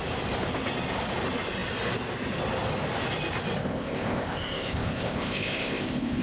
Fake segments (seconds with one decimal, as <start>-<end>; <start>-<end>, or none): 3.6-6.2